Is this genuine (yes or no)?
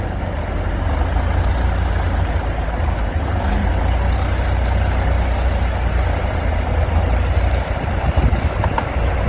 yes